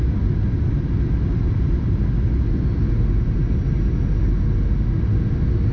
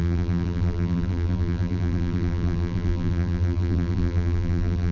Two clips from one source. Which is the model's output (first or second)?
second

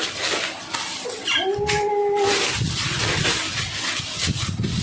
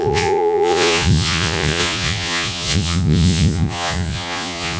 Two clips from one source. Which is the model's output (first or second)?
second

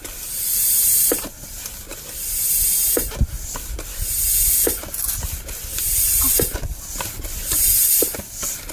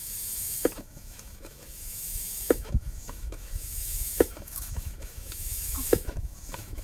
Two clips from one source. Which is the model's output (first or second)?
second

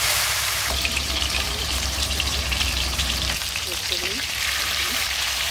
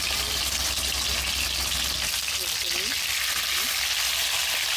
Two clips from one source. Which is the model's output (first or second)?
first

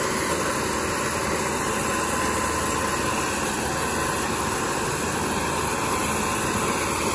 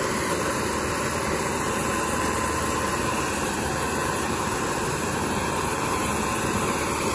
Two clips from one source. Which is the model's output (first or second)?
second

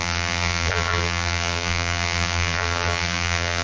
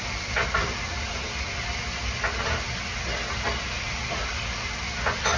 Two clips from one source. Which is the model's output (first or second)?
first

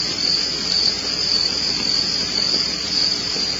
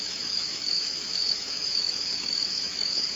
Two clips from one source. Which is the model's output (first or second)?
second